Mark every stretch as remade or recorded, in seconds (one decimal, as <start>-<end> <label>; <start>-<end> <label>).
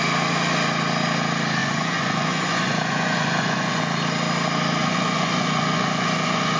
0.0-1.6 recorded; 1.6-3.8 remade; 3.8-4.8 recorded; 4.8-6.6 remade